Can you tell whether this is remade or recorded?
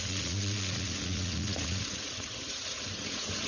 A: remade